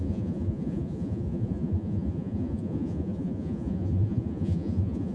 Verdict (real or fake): fake